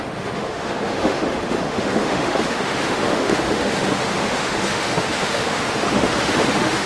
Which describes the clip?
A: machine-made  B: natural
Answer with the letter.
A